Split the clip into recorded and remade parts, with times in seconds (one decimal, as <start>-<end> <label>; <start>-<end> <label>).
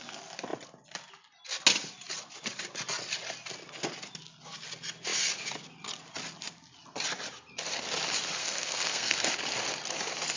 0.0-8.4 recorded; 8.4-9.3 remade; 9.3-10.4 recorded